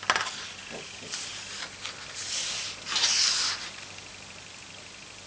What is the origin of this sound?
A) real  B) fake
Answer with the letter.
A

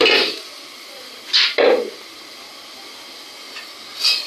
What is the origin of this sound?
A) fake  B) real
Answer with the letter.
B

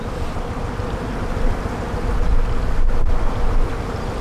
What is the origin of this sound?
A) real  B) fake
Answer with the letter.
A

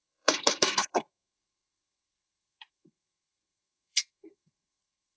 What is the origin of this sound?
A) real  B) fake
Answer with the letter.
B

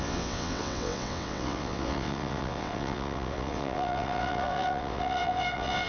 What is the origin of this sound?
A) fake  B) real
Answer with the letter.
A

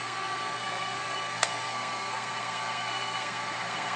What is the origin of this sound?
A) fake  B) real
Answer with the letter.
A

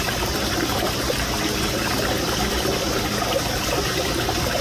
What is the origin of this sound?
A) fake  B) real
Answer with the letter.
B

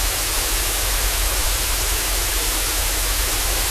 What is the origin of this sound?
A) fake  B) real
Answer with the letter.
A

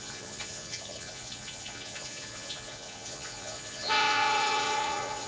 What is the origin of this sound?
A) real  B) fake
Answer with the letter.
B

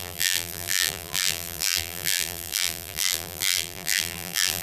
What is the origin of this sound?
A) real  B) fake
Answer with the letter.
B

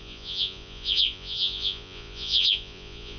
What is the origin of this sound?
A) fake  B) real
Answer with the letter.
A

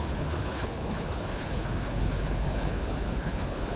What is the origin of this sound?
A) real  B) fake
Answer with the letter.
B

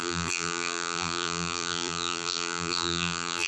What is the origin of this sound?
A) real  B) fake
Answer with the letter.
B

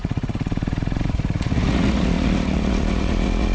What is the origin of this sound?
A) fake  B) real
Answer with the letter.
A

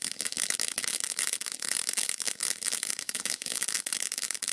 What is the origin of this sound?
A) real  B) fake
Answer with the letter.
B